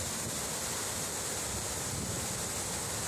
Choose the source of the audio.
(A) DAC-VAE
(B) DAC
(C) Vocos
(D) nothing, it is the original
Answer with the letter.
D